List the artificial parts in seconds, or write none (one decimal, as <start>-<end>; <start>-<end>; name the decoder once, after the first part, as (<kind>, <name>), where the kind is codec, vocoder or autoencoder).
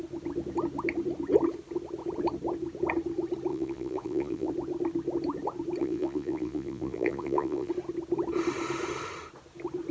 3.5-4.5 (vocoder, Vocos); 5.8-7.7